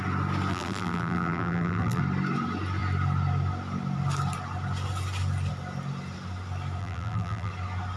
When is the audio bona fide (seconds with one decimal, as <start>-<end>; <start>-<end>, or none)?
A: 0.0-0.5; 2.0-6.8; 7.5-8.0